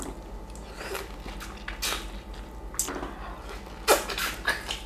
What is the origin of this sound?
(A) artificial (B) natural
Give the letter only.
B